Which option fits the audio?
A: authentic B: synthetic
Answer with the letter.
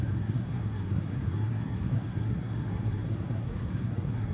B